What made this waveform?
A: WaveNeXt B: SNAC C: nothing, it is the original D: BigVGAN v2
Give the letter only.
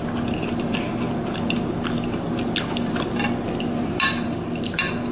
C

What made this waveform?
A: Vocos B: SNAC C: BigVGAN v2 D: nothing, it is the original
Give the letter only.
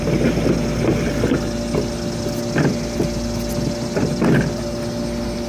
D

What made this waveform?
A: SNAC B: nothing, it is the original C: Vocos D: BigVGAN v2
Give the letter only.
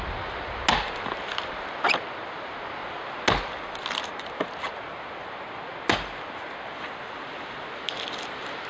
B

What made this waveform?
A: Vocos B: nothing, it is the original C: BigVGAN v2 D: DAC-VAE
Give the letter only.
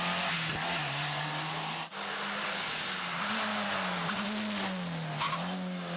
B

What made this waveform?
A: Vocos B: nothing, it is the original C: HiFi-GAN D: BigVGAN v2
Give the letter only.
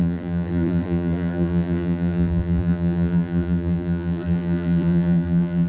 D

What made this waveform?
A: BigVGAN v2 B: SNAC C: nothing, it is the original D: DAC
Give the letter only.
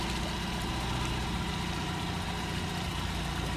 C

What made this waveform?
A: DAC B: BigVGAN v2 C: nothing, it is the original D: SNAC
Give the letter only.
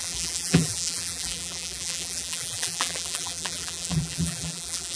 B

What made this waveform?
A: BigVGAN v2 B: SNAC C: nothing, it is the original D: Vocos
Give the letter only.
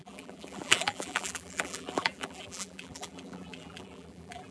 A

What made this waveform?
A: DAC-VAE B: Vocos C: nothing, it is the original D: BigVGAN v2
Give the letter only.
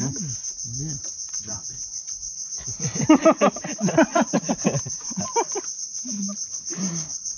D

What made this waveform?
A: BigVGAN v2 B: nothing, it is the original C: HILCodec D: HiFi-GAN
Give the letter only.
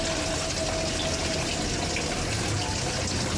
B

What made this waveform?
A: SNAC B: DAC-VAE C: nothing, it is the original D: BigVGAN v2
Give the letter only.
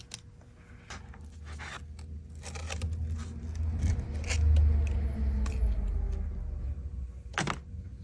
C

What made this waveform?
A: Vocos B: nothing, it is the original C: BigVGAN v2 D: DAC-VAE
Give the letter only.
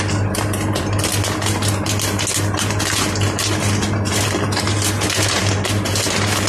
B